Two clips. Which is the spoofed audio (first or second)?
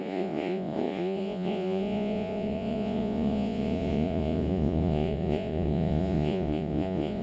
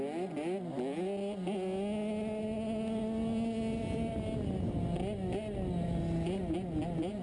first